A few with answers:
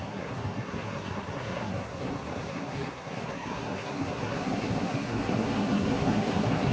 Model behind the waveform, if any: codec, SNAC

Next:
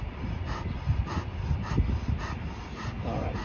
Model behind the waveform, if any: none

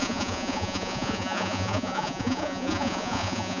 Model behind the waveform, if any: vocoder, Vocos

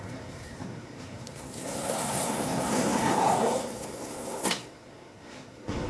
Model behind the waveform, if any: codec, SNAC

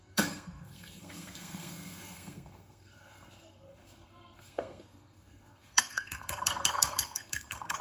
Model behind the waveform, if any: codec, SNAC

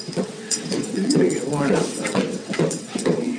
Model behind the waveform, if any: vocoder, WaveNeXt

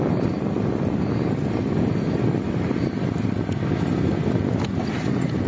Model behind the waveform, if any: none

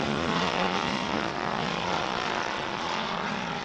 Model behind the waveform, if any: vocoder, Vocos